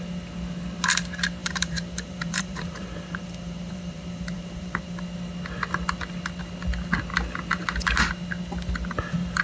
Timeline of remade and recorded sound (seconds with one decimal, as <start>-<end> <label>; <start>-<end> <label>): 0.0-1.4 recorded; 1.4-5.0 remade; 5.0-9.4 recorded